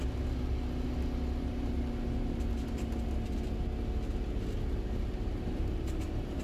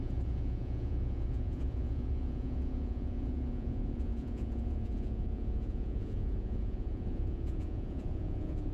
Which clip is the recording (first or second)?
first